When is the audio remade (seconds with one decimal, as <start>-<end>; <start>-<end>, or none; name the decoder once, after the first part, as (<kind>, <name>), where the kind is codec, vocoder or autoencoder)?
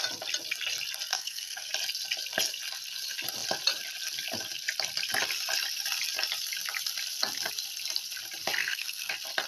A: 1.1-1.7 (codec, SNAC); 8.6-9.1